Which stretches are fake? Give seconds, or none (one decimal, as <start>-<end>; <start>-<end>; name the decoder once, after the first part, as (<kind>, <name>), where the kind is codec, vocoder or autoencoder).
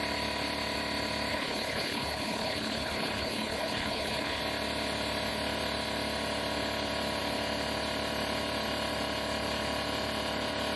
1.3-4.4 (codec, HILCodec)